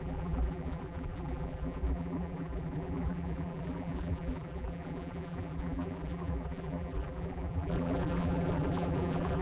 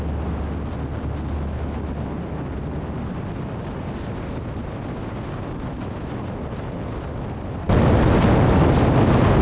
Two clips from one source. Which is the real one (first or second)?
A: second